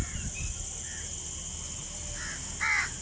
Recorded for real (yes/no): yes